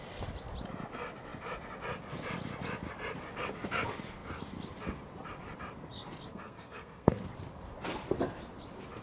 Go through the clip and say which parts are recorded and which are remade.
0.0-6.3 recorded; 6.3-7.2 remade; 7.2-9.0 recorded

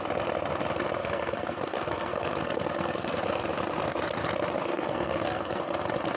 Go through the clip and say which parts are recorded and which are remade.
0.0-1.0 recorded; 1.0-3.2 remade; 3.2-4.7 recorded; 4.7-5.6 remade; 5.6-6.2 recorded

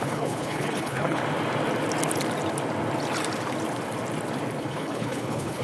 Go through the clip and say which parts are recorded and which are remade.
0.0-1.2 remade; 1.2-4.6 recorded; 4.6-5.6 remade

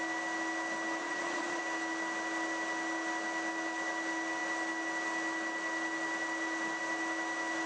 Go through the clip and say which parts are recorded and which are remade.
0.0-1.0 recorded; 1.0-1.6 remade; 1.6-7.7 recorded

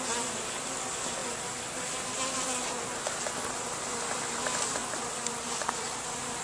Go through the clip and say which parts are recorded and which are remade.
0.0-6.4 recorded